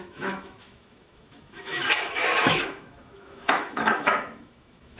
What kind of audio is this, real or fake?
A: fake